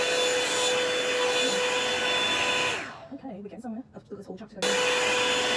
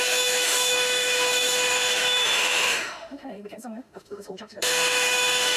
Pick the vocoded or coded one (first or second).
second